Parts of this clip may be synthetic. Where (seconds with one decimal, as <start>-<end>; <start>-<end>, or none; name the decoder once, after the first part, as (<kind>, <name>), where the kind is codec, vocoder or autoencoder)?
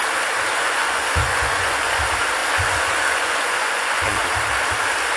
0.5-2.0 (vocoder, Vocos); 2.4-4.2